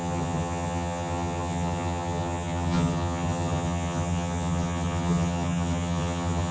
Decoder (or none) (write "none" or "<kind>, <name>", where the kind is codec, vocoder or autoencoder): vocoder, HiFi-GAN